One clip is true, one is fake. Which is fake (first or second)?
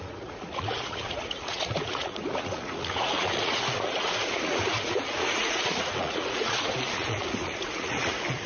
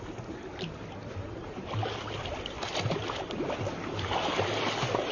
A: first